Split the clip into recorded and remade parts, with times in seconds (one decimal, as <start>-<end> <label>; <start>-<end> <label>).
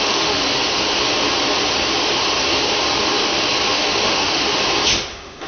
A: 0.0-0.4 remade; 0.4-3.7 recorded; 3.7-4.4 remade; 4.4-5.1 recorded; 5.1-5.5 remade